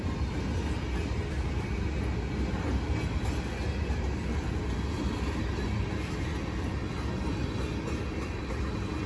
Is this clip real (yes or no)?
yes